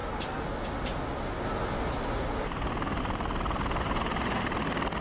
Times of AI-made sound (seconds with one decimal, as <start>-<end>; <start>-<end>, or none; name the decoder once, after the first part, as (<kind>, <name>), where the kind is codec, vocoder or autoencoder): none